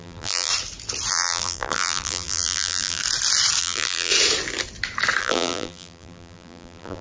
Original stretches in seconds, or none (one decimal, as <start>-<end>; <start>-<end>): 0.5-1.1; 3.0-3.6; 4.1-5.2